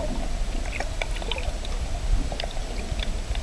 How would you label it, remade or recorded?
recorded